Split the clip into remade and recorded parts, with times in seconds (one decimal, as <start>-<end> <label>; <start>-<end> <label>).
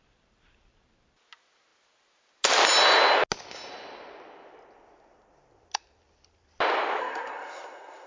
0.0-7.0 recorded; 7.0-8.1 remade